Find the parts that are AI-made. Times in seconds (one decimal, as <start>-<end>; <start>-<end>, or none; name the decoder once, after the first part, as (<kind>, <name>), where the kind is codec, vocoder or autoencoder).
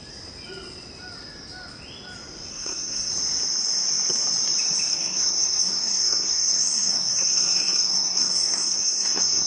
2.5-3.1 (codec, SNAC); 4.9-9.5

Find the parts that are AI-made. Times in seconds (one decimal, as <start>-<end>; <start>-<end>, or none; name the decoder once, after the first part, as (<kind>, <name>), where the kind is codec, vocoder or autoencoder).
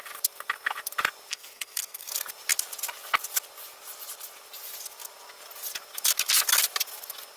1.3-2.1 (codec, SNAC)